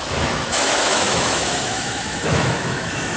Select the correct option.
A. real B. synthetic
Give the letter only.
B